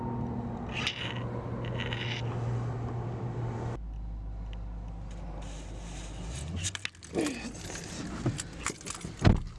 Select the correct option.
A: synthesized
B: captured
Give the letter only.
B